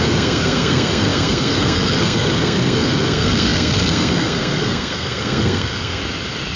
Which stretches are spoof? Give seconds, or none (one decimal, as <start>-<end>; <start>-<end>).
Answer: 0.0-6.0